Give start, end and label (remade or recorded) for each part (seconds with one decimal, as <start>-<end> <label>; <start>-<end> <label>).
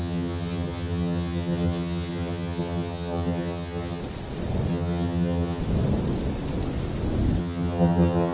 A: 0.0-4.0 remade; 4.0-4.7 recorded; 4.7-5.6 remade; 5.6-7.4 recorded; 7.4-8.3 remade